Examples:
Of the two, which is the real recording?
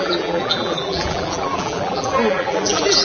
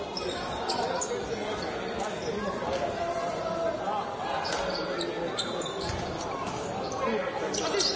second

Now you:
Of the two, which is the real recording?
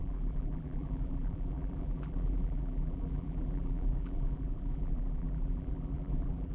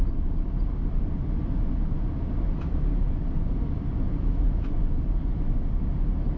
second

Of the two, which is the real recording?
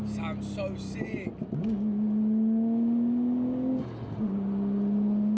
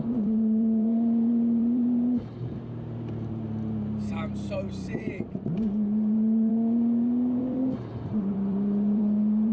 first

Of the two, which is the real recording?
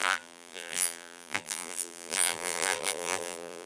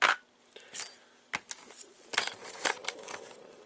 second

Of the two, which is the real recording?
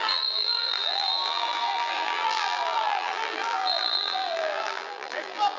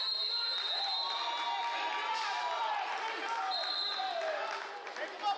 second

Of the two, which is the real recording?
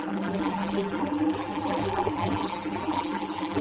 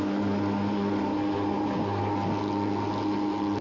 second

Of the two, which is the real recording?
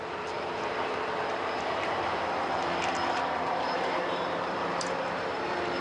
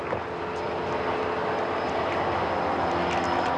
second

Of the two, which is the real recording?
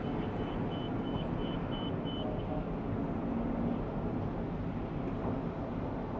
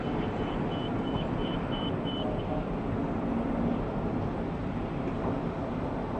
first